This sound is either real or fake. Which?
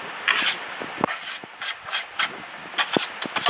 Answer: real